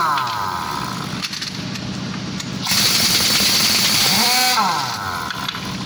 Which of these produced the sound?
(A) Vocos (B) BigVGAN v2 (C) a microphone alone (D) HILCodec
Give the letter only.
C